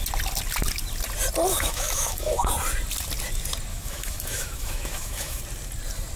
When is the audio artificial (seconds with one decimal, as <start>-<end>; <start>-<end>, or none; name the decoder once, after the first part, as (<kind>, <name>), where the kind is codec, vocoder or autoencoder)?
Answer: 1.5-2.5 (autoencoder, DAC-VAE); 3.7-5.4